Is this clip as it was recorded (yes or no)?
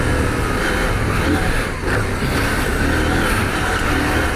yes